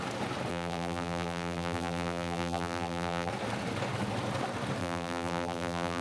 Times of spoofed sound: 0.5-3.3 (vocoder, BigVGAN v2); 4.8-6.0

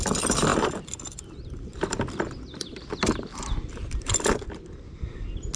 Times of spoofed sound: none

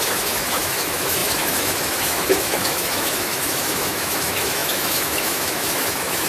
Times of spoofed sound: 0.0-6.3 (autoencoder, DAC-VAE)

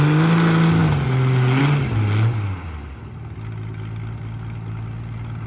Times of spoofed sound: none